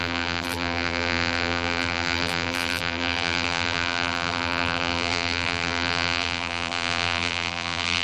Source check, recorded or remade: remade